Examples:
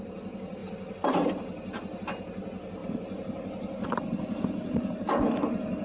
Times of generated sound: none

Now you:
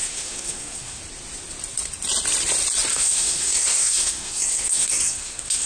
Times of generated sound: 0.0-1.0 (codec, SNAC); 2.9-5.7

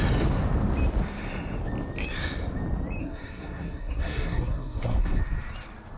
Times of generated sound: 3.0-5.2 (codec, SNAC)

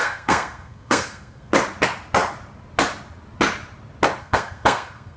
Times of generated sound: 0.0-1.5 (codec, SNAC); 4.2-5.2